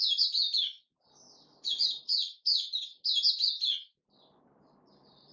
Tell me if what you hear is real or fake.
real